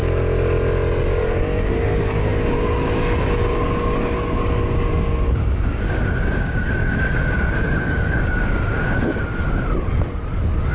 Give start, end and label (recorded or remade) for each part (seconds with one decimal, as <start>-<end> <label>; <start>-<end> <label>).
0.0-1.0 recorded; 1.0-9.1 remade; 9.1-10.7 recorded